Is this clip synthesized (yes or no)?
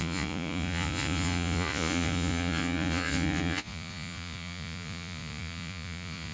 yes